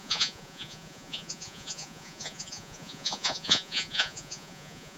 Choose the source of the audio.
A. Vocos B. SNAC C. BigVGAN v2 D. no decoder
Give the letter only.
A